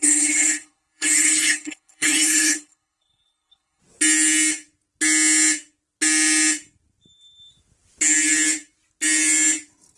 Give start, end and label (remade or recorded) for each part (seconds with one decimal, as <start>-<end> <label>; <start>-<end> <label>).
0.0-3.8 remade; 3.8-10.0 recorded